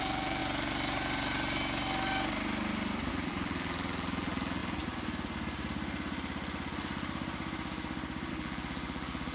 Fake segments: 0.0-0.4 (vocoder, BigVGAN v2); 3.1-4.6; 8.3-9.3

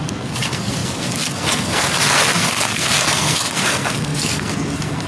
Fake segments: 0.0-5.1 (codec, SNAC)